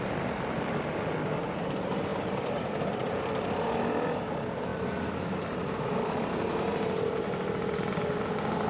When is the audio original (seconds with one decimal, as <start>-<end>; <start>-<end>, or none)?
0.0-2.1; 3.2-4.7; 5.8-6.7; 7.2-8.7